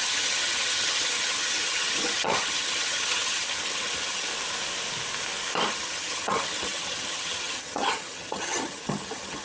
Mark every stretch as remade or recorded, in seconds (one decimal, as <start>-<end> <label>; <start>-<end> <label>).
0.0-4.3 remade; 4.3-5.7 recorded; 5.7-9.4 remade